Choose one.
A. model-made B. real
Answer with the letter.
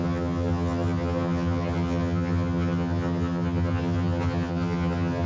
A